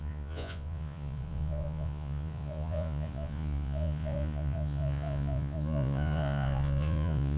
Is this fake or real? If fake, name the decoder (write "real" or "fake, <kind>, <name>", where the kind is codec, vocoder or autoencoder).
fake, vocoder, Vocos